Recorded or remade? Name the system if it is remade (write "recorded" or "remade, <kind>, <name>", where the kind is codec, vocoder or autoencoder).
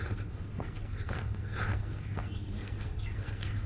remade, codec, SNAC